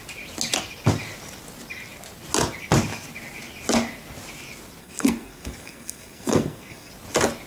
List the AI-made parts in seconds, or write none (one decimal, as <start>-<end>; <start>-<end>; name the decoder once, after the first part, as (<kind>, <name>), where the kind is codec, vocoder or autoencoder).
4.8-6.9 (codec, SNAC)